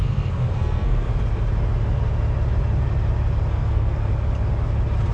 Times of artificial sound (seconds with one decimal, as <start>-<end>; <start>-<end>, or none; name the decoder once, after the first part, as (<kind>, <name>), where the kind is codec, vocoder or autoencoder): 0.0-1.1 (codec, SNAC); 3.5-4.1